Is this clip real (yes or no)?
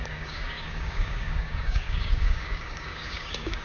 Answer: no